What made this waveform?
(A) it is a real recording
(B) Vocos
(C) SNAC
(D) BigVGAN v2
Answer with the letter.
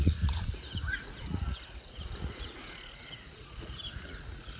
B